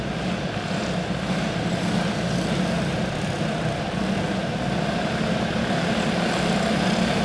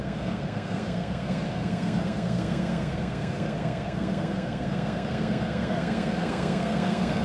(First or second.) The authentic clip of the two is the first